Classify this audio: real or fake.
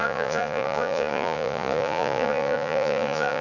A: fake